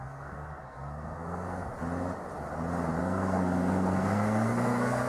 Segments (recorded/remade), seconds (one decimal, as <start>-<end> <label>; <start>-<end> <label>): 0.0-1.7 remade; 1.7-3.0 recorded; 3.0-5.1 remade